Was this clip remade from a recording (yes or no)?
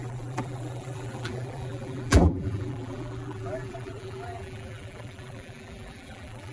yes